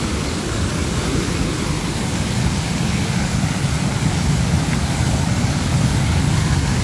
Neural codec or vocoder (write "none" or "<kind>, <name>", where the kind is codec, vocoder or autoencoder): codec, DAC